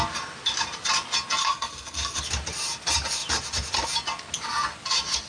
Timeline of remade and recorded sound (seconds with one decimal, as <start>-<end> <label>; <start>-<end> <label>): 0.0-1.4 recorded; 1.4-2.2 remade; 2.2-5.3 recorded

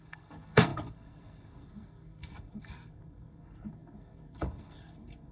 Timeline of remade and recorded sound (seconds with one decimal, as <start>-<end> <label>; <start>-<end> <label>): 0.0-5.3 remade